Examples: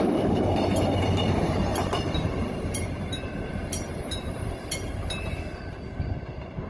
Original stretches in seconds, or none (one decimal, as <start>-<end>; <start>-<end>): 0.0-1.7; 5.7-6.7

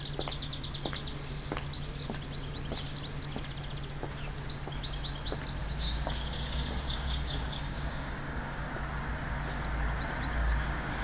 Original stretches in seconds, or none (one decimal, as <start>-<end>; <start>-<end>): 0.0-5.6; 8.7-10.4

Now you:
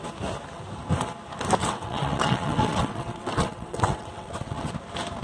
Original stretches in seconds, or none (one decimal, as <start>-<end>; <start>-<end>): 0.0-1.6; 4.7-5.2

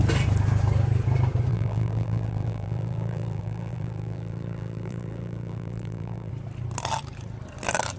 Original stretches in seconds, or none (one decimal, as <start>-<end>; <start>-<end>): 0.0-1.5; 6.3-8.0

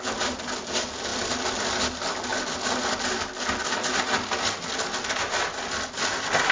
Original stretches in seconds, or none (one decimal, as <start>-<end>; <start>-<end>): 0.0-6.5

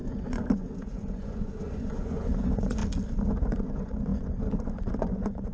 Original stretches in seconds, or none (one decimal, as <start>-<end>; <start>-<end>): 2.8-3.3